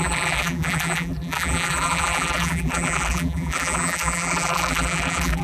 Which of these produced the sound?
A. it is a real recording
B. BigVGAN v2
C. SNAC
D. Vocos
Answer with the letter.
B